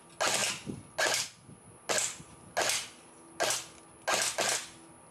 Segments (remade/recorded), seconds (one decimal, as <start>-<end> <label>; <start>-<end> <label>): 0.0-5.1 recorded